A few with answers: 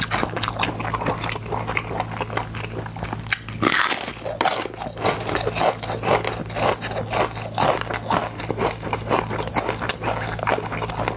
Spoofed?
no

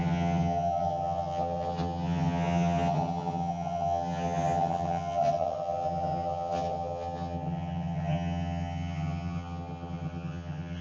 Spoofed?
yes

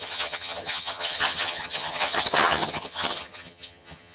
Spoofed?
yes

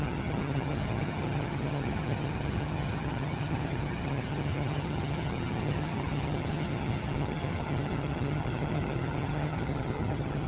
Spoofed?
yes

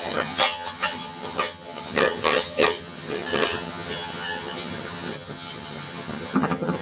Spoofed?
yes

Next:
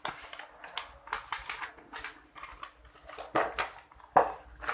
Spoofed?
no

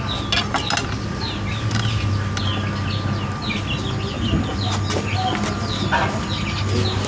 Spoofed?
no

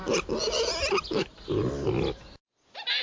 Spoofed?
no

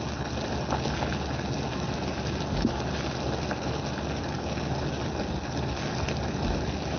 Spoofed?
no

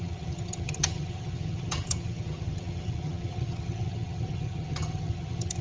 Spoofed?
yes